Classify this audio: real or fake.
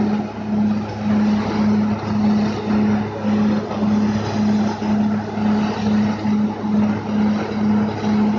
real